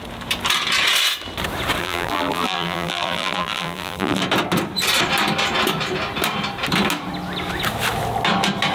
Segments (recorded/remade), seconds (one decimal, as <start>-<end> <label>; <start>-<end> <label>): 0.0-1.8 recorded; 1.8-4.2 remade; 4.2-8.7 recorded